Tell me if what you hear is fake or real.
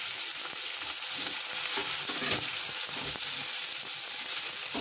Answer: real